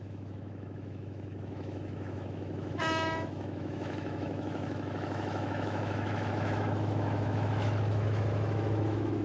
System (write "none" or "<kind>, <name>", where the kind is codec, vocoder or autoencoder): autoencoder, DAC-VAE